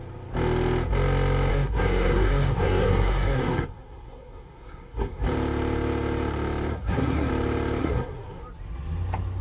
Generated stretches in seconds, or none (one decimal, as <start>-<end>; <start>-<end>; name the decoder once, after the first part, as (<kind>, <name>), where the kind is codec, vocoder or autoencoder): 1.5-5.2 (codec, SNAC); 6.7-7.3; 7.8-8.4